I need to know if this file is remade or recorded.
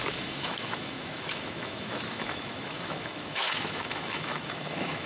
remade